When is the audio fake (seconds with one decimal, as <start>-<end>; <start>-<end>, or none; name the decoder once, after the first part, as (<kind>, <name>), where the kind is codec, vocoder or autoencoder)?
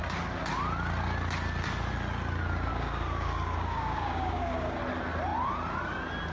2.7-4.8 (codec, DAC)